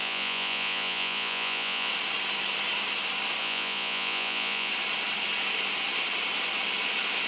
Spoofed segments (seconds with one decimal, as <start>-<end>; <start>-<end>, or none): 0.0-1.9; 3.4-4.7